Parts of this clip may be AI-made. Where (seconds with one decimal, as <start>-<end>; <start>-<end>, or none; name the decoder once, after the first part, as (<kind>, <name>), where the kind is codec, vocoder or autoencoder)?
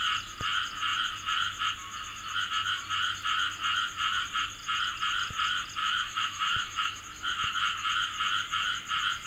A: 5.8-7.0 (autoencoder, DAC-VAE)